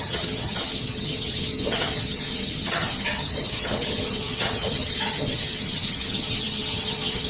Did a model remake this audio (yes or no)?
yes